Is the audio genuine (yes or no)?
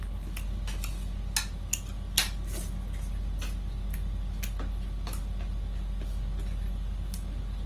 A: yes